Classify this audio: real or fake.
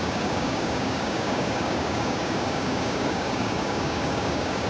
fake